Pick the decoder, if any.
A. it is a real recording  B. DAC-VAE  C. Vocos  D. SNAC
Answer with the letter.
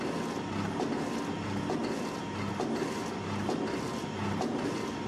A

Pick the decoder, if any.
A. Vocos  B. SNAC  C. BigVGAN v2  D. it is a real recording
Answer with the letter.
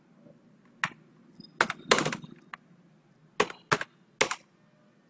D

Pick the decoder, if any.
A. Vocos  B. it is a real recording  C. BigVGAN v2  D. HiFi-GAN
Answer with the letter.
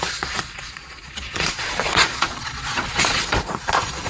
A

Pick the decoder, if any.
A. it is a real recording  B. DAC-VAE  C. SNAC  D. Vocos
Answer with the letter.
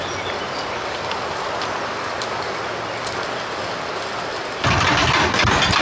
A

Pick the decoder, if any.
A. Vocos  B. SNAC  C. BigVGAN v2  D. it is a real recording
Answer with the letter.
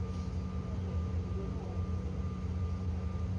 D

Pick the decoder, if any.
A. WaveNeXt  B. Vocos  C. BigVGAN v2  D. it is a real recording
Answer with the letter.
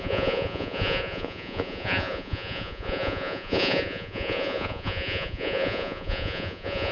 B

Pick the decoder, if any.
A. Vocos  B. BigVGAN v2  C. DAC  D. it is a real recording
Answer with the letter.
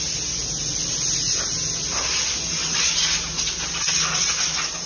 D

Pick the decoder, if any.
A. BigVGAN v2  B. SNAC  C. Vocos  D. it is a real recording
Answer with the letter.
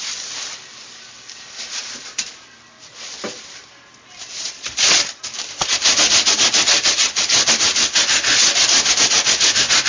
D